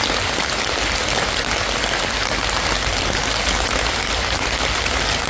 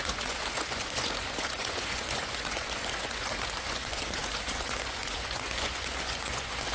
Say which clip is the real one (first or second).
first